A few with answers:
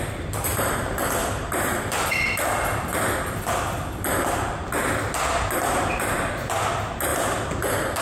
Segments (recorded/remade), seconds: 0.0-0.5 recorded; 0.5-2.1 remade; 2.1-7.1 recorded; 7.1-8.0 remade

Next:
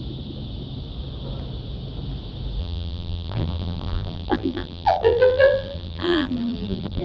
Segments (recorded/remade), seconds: 0.0-2.6 recorded; 2.6-7.0 remade

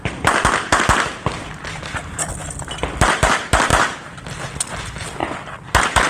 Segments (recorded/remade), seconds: 0.0-1.7 recorded; 1.7-2.3 remade; 2.3-6.1 recorded

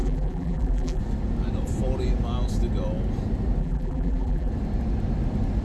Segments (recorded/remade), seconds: 0.0-1.0 remade; 1.0-3.6 recorded; 3.6-4.5 remade; 4.5-5.6 recorded

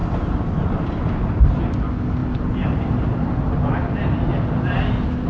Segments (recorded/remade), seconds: 0.0-1.5 remade; 1.5-2.2 recorded; 2.2-2.8 remade; 2.8-5.3 recorded

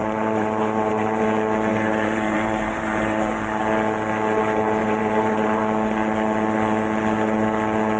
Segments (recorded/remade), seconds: 0.0-1.2 remade; 1.2-1.7 recorded; 1.7-3.6 remade; 3.6-4.8 recorded; 4.8-5.6 remade; 5.6-8.0 recorded